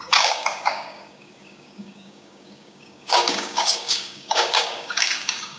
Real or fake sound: fake